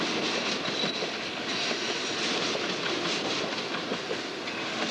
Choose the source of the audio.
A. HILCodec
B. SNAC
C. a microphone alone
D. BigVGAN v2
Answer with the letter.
C